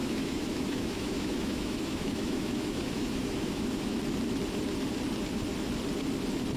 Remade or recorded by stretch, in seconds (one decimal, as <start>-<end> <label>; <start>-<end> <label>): 0.0-4.0 remade; 4.0-6.6 recorded